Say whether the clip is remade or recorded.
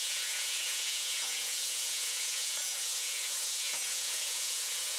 remade